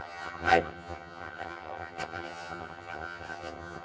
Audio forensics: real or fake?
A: fake